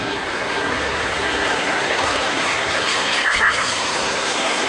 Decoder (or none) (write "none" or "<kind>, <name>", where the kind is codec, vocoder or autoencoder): codec, SNAC